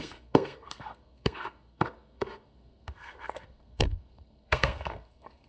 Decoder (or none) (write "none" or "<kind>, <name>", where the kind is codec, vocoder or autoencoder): codec, SNAC